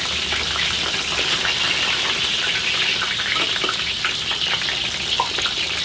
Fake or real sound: real